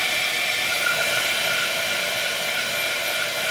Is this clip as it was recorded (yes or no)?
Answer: yes